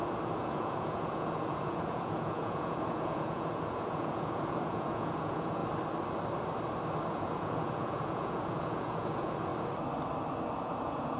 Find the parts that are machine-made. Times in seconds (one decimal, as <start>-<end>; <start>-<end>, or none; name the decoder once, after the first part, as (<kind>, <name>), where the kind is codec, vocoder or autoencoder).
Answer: 0.0-5.6 (vocoder, Vocos); 7.1-9.5; 10.6-11.2